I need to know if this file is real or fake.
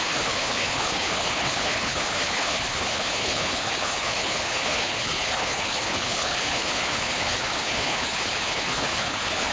fake